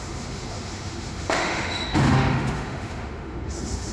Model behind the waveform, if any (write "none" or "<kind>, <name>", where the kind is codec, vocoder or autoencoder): autoencoder, DAC-VAE